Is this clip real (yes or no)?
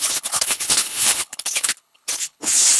no